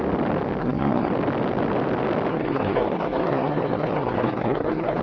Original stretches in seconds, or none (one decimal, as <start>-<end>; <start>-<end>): 0.0-0.6; 1.1-2.3